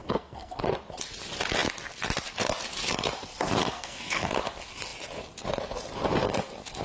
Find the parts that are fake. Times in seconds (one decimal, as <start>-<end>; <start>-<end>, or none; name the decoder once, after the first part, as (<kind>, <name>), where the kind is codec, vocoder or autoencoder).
0.0-0.6 (codec, SNAC); 3.6-4.3